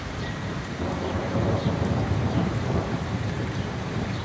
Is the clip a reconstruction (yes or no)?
yes